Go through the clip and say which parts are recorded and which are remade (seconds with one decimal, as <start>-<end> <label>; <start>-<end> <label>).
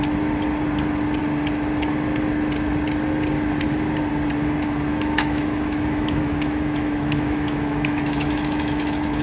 0.0-4.9 recorded; 4.9-9.2 remade